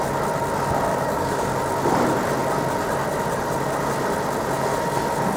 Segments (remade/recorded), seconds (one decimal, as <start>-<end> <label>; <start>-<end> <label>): 0.0-0.9 recorded; 0.9-1.5 remade; 1.5-5.4 recorded

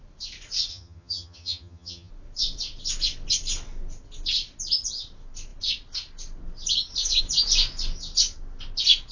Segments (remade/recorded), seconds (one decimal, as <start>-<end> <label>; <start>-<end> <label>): 0.0-0.7 recorded; 0.7-2.1 remade; 2.1-9.1 recorded

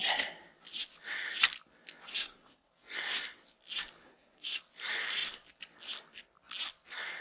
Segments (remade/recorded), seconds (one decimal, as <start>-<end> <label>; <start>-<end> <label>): 0.0-2.1 recorded; 2.1-2.7 remade; 2.7-4.0 recorded; 4.0-4.6 remade; 4.6-7.2 recorded

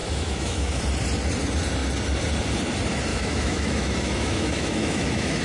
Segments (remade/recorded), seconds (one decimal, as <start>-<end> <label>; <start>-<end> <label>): 0.0-0.8 remade; 0.8-3.1 recorded; 3.1-5.4 remade

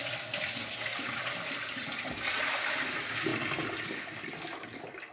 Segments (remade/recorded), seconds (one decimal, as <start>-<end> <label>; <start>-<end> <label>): 0.0-5.1 recorded

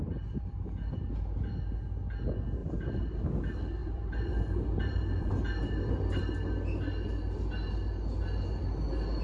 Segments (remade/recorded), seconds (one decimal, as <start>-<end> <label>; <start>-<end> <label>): 0.0-2.6 recorded; 2.6-3.2 remade; 3.2-3.8 recorded; 3.8-5.3 remade; 5.3-9.2 recorded

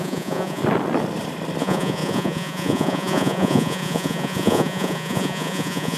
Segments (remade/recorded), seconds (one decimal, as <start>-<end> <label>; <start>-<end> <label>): 0.0-0.6 remade; 0.6-1.6 recorded; 1.6-6.0 remade

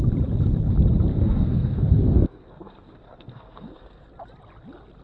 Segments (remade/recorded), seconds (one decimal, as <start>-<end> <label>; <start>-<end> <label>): 0.0-1.1 recorded; 1.1-4.1 remade; 4.1-5.0 recorded